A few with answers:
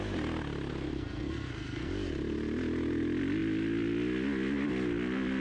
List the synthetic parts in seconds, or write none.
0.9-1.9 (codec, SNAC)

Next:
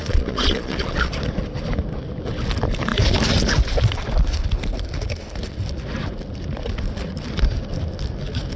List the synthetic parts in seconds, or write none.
0.0-1.1 (vocoder, Vocos)

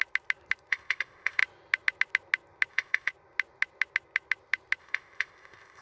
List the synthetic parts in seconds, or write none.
0.7-1.4 (codec, ZipCodec); 2.7-3.1; 4.8-5.8

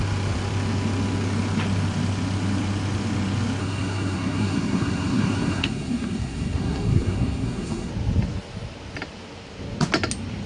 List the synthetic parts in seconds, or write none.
3.6-7.9 (codec, SNAC)

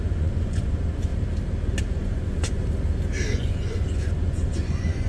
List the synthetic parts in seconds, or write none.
0.0-1.1 (vocoder, Vocos); 1.8-2.6; 3.3-5.1

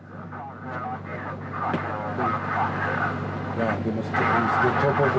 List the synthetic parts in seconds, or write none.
none

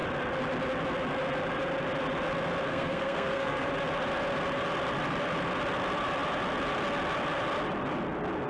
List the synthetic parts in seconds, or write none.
2.7-3.7 (codec, SNAC)

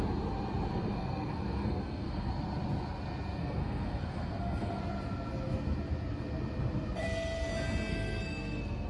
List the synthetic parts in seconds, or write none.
0.7-2.3 (codec, SNAC); 3.4-4.8; 7.0-7.5; 7.9-8.9